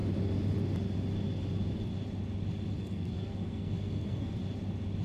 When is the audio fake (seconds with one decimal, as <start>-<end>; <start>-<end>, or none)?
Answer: 2.8-4.4